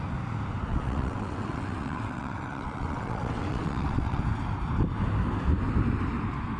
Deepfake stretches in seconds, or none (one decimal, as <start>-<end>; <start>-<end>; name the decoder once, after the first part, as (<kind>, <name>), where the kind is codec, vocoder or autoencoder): 0.7-4.2 (vocoder, WaveNeXt)

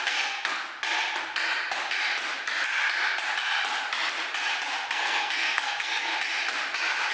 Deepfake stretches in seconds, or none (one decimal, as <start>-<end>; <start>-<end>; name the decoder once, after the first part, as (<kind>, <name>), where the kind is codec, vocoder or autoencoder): 0.0-0.6 (codec, SNAC); 4.9-6.1

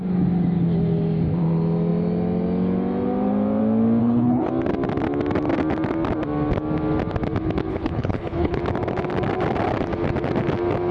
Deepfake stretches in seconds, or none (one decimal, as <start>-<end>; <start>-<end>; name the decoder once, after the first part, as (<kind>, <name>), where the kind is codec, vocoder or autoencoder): 4.0-4.5 (codec, HILCodec); 7.7-8.6

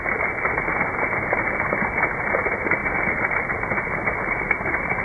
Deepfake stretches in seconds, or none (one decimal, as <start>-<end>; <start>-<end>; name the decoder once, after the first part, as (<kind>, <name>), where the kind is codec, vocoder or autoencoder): none